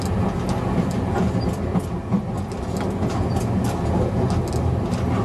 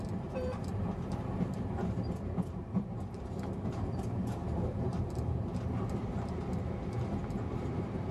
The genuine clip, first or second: first